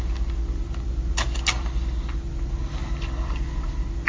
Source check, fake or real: real